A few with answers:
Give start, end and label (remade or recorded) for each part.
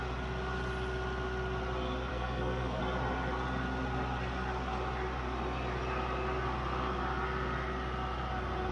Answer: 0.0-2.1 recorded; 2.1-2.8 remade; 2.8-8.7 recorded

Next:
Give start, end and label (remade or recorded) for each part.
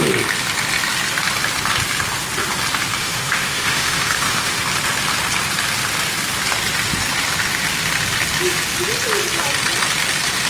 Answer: 0.0-3.0 recorded; 3.0-4.6 remade; 4.6-10.5 recorded